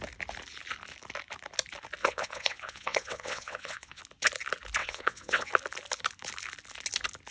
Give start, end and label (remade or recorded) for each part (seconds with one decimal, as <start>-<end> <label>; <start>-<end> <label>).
0.0-2.0 recorded; 2.0-4.0 remade; 4.0-4.8 recorded; 4.8-5.5 remade; 5.5-7.3 recorded